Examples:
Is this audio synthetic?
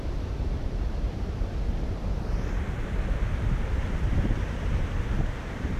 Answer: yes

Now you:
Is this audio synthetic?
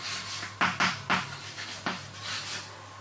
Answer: no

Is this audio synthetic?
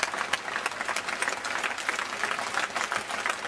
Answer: no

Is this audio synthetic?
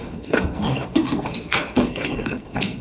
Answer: yes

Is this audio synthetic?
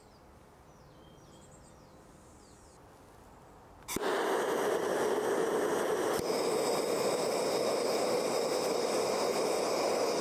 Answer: no